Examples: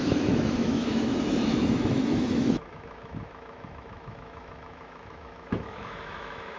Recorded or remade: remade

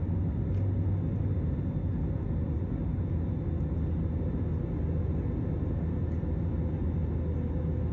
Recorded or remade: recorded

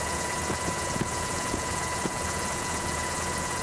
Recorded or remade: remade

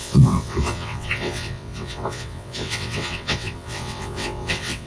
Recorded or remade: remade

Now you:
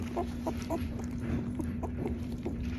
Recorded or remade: remade